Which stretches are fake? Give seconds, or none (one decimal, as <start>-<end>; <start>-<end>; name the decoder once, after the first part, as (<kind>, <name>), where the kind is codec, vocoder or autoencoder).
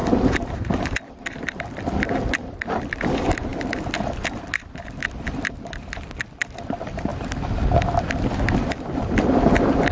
0.0-9.9 (vocoder, BigVGAN v2)